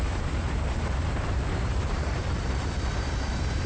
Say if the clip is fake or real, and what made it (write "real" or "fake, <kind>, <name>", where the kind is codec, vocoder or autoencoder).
fake, vocoder, BigVGAN v2